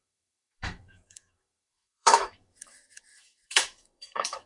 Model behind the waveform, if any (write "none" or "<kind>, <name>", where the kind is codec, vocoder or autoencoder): autoencoder, DAC-VAE